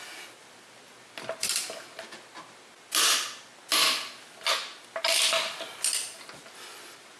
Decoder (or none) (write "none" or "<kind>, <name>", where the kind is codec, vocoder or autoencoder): none